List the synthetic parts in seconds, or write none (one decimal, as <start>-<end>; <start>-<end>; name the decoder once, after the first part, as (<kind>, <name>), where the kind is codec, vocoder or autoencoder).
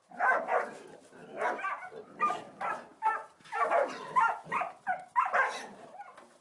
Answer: none